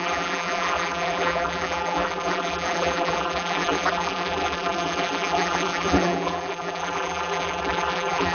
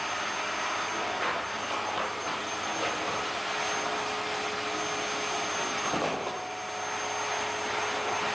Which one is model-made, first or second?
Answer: first